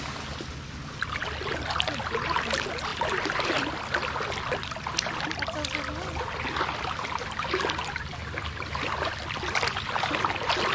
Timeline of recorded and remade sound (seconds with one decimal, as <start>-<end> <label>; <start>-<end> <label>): 0.0-10.7 recorded